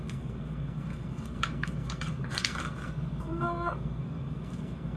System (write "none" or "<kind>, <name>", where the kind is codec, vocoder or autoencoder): codec, SNAC